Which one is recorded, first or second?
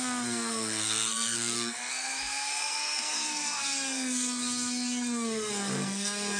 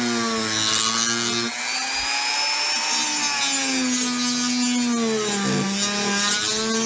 second